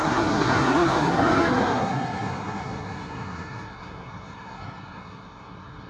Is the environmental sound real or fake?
fake